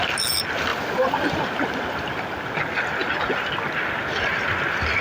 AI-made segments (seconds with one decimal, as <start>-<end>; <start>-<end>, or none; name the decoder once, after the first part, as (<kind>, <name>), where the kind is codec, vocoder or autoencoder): 0.7-2.5 (vocoder, BigVGAN v2)